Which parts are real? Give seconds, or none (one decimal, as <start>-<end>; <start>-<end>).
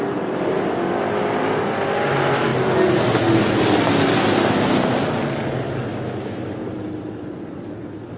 0.0-5.9; 6.7-8.2